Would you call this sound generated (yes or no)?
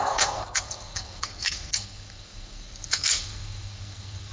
yes